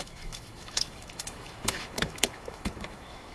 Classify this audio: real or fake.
fake